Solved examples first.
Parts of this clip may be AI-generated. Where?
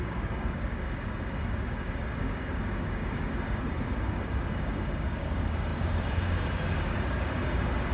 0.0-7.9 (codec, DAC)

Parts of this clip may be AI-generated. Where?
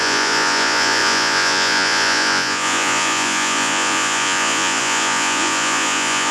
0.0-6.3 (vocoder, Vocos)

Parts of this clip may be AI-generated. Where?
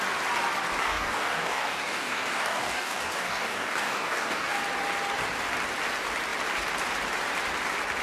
0.8-4.6 (codec, DAC)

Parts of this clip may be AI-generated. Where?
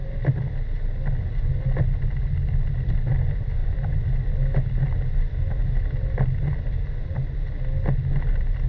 none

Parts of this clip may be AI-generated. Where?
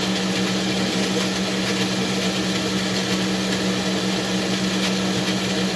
none